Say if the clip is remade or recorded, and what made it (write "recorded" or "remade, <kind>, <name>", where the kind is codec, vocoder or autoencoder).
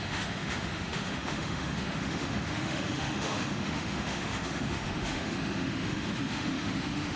remade, autoencoder, DAC-VAE